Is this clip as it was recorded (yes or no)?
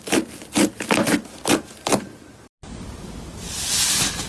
yes